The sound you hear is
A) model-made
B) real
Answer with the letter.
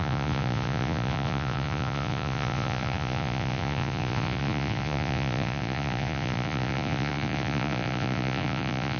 A